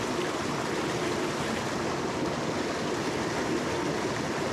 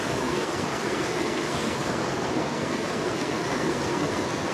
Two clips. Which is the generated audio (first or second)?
second